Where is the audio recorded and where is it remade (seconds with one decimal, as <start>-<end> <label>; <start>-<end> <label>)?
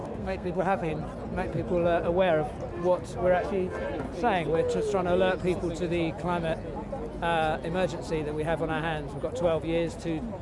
0.0-0.9 remade; 0.9-10.4 recorded